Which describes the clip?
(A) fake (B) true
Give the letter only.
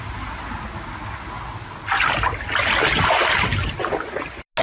B